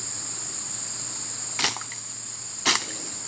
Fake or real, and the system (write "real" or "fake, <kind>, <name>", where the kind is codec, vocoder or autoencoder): real